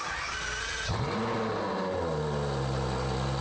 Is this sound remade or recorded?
recorded